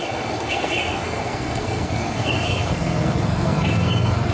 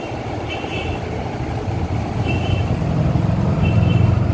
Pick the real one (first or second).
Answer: second